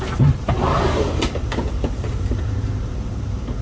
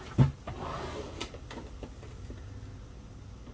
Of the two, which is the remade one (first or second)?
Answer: first